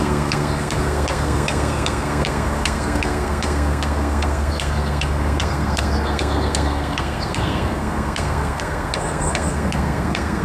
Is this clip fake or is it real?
fake